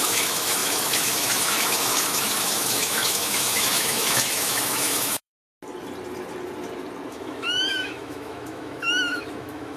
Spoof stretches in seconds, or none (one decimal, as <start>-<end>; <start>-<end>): 0.0-5.5; 7.1-9.8